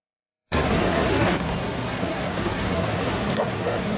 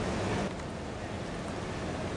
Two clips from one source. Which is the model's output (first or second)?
first